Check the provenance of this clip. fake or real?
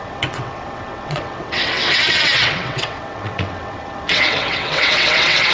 fake